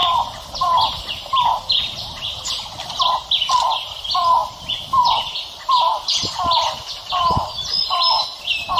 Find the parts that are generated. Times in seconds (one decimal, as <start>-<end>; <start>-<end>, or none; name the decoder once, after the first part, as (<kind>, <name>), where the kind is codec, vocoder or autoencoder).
none